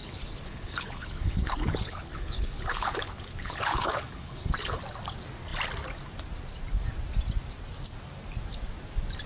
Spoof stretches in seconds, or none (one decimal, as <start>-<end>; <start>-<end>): 0.0-4.8